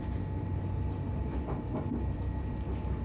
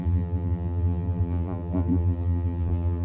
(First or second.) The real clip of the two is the first